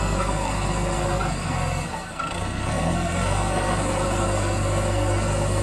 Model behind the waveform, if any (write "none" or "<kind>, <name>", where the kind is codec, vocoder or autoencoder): codec, SNAC